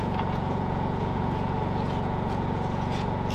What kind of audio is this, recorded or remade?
remade